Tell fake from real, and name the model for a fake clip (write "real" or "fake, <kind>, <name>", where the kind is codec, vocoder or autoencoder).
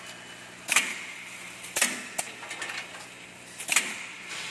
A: real